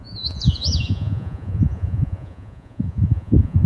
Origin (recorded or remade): remade